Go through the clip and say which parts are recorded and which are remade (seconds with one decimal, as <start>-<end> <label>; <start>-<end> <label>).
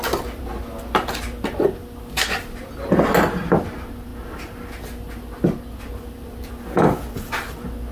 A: 0.0-7.9 recorded